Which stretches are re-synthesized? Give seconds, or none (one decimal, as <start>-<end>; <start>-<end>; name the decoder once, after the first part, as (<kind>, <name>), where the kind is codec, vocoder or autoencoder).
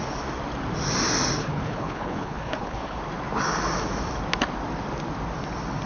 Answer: 1.4-3.0 (codec, HILCodec)